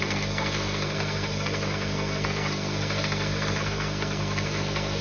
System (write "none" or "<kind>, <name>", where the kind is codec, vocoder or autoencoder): codec, SNAC